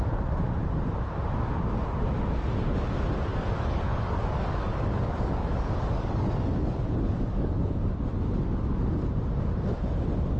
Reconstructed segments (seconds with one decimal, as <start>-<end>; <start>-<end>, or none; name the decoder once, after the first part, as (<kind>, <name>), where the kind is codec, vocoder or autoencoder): 3.3-8.0 (codec, DAC)